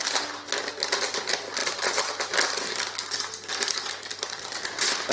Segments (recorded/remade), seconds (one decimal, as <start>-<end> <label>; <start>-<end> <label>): 0.0-5.1 recorded